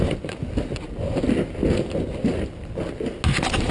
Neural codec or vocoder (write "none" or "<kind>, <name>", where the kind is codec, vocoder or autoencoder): none